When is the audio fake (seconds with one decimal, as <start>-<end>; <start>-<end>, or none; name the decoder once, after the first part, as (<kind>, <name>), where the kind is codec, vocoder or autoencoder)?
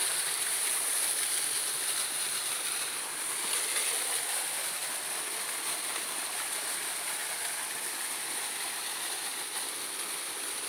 0.0-2.7 (vocoder, BigVGAN v2)